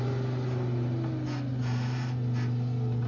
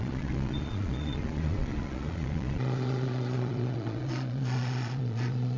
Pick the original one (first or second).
first